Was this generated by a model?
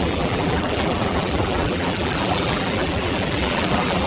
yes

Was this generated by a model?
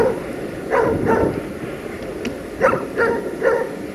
no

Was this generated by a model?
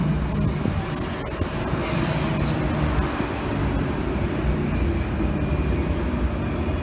no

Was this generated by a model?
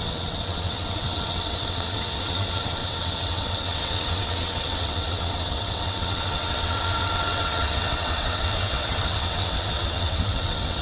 yes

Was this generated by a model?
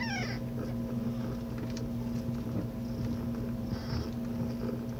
no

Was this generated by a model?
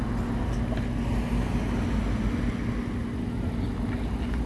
no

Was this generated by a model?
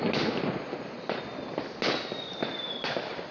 no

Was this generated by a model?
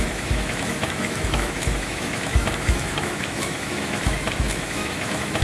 yes